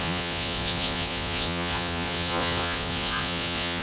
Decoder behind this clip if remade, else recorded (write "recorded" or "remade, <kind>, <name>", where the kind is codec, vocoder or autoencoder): remade, vocoder, Vocos